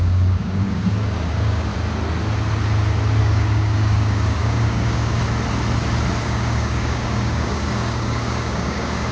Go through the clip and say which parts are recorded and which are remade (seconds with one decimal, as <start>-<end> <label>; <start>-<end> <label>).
0.0-1.7 remade; 1.7-3.2 recorded; 3.2-5.2 remade; 5.2-6.2 recorded; 6.2-9.1 remade